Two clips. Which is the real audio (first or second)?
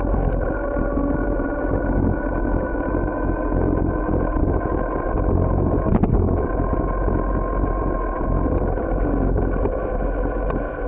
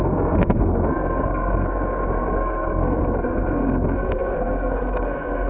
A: first